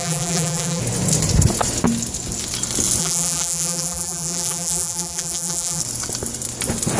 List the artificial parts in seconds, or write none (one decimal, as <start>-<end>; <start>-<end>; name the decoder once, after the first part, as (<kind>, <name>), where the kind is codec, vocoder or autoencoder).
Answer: 0.0-0.8 (vocoder, BigVGAN v2); 3.0-5.8